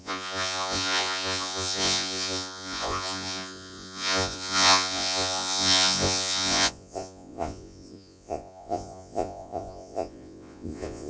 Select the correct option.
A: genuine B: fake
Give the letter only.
B